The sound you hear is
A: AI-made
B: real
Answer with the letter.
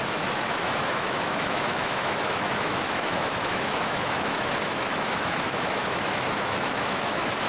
A